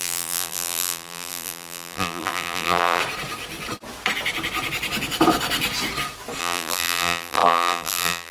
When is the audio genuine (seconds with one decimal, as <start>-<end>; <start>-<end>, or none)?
3.0-6.4